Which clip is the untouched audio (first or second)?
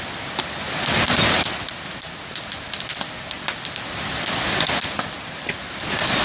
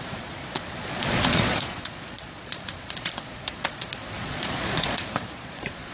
first